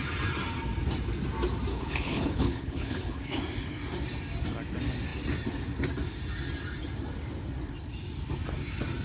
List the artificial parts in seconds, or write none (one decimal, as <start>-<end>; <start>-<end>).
1.7-3.4